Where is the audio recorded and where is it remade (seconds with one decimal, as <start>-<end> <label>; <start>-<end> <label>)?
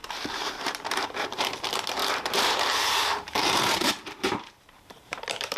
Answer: 0.0-1.4 remade; 1.4-2.0 recorded; 2.0-5.6 remade